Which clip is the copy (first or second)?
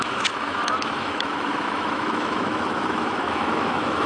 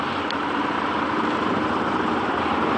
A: first